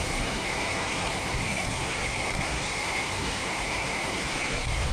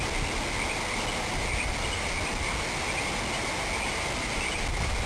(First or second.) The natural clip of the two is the second